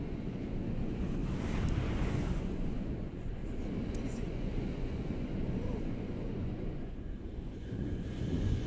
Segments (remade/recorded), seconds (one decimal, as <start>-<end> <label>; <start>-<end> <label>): 0.0-1.2 remade; 1.2-1.8 recorded; 1.8-3.4 remade; 3.4-4.0 recorded; 4.0-8.7 remade